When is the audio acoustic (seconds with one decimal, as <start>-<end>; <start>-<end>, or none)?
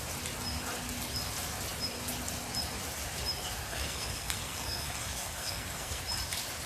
0.0-3.7; 6.0-6.7